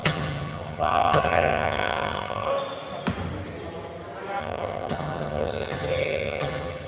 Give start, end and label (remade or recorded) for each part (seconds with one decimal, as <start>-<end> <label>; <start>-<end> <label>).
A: 0.0-2.5 remade; 2.5-4.4 recorded; 4.4-6.9 remade

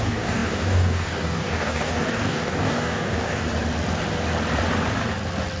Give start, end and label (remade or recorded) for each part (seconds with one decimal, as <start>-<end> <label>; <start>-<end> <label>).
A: 0.0-3.4 remade; 3.4-5.6 recorded

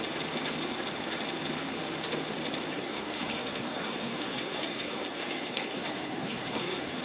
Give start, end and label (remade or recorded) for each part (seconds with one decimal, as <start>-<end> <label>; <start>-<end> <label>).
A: 0.0-2.7 recorded; 2.7-7.0 remade

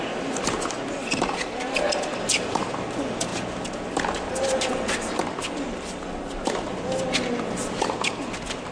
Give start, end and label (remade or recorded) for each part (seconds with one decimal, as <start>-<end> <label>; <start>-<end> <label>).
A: 0.0-8.7 recorded

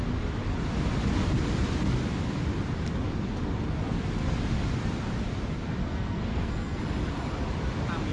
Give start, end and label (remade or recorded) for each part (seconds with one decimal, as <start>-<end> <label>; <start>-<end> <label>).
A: 0.0-5.8 recorded; 5.8-6.8 remade; 6.8-8.1 recorded